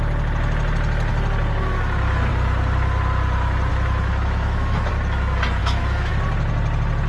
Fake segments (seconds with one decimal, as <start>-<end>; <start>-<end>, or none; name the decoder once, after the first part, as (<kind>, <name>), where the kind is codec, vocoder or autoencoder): 3.7-4.9 (autoencoder, DAC-VAE); 5.6-6.1